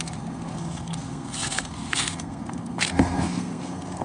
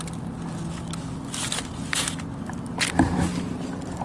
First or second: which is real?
second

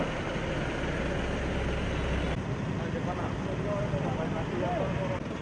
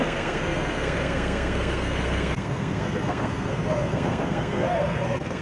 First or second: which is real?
first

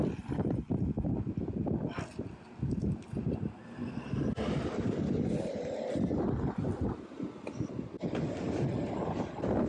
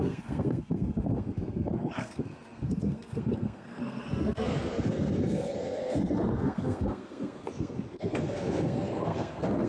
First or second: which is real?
first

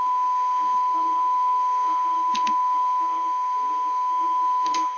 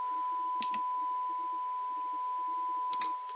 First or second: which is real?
second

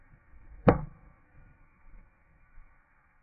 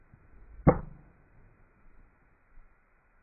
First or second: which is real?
second